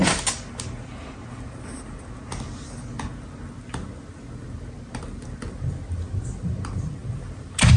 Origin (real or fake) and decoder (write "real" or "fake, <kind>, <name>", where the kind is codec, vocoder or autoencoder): real